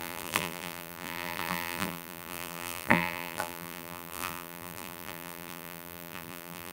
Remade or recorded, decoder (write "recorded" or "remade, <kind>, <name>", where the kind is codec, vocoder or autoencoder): remade, vocoder, BigVGAN v2